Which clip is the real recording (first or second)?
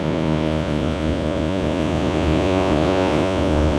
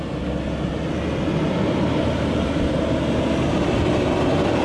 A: second